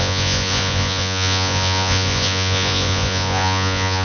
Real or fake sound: fake